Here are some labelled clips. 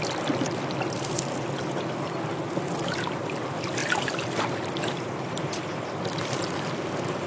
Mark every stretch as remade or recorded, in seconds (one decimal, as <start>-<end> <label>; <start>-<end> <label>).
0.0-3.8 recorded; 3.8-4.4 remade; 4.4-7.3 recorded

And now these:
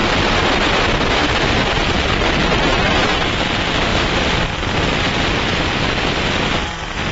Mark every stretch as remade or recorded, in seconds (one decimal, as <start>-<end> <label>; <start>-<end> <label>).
0.0-3.9 recorded; 3.9-6.1 remade; 6.1-7.1 recorded

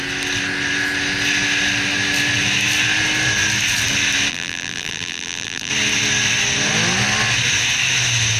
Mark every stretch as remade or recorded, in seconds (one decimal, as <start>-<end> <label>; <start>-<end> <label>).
0.0-4.3 recorded; 4.3-5.7 remade; 5.7-8.4 recorded

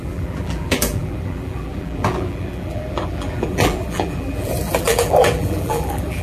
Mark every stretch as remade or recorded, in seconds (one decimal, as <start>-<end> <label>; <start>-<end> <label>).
0.0-6.2 remade